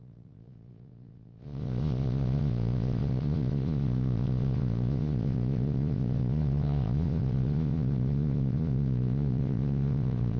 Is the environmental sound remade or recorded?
remade